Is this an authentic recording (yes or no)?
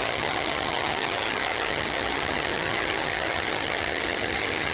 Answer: no